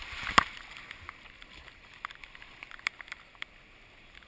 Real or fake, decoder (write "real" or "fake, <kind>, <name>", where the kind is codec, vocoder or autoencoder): real